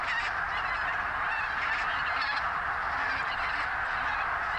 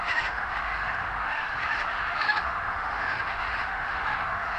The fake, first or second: second